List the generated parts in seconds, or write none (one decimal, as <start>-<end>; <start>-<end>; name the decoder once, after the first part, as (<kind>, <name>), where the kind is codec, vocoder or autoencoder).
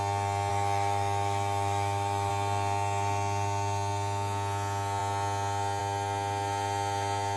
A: 0.5-2.3 (autoencoder, DAC-VAE)